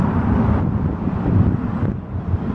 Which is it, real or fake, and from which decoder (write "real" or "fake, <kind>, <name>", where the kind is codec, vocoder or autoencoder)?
real